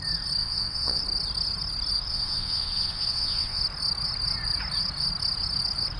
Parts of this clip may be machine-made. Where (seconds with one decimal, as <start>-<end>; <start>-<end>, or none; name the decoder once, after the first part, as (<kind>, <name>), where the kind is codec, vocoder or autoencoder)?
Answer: 0.4-1.0 (vocoder, WaveNeXt); 2.1-3.6